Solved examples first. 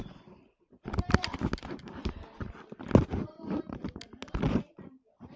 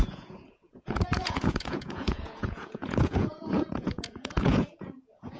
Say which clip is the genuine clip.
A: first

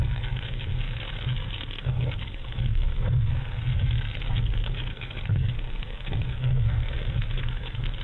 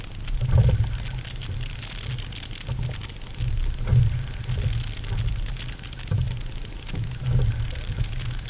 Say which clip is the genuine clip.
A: second